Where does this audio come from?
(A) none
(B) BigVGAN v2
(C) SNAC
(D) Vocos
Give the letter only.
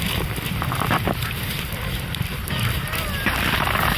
B